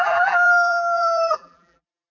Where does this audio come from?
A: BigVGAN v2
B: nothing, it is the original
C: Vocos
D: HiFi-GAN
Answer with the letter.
A